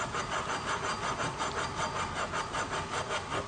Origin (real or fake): real